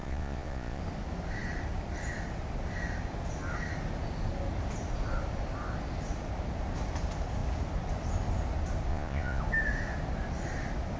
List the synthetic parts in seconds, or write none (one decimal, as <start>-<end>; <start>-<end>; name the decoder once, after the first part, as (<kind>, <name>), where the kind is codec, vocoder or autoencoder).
0.0-0.8 (vocoder, Vocos); 8.9-9.4